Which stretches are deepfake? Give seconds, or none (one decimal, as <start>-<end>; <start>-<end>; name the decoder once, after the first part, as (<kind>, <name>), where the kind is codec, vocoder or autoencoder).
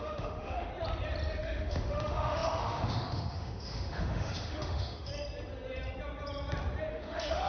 0.0-0.7 (autoencoder, DAC-VAE); 1.4-5.1; 6.9-7.5